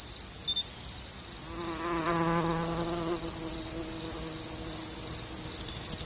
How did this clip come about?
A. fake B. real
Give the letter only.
B